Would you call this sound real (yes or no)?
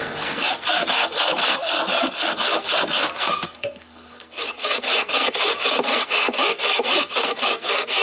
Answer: no